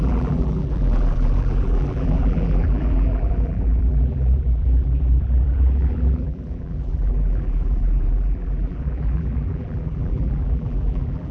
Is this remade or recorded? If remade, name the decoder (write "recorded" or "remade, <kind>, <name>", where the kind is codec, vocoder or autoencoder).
remade, vocoder, BigVGAN v2